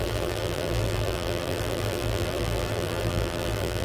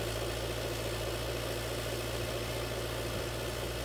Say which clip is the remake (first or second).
first